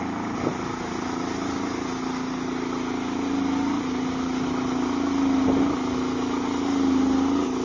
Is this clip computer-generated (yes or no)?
no